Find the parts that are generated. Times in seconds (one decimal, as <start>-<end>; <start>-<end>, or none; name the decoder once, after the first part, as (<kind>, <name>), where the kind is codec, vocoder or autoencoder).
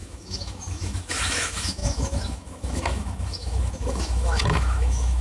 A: 0.0-5.2 (autoencoder, DAC-VAE)